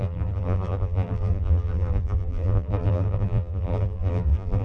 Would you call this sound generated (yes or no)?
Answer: yes